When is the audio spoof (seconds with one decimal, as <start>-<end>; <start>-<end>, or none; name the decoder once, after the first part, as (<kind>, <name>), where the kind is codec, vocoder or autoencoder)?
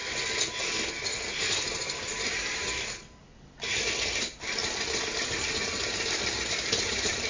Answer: 1.4-3.3 (vocoder, BigVGAN v2); 3.9-7.3